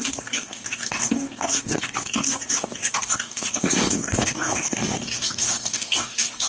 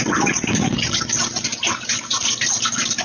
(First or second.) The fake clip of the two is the first